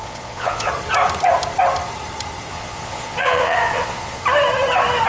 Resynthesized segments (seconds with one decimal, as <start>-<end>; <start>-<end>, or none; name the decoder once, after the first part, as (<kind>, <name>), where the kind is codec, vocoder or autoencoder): 0.0-0.7 (vocoder, Vocos); 2.5-4.2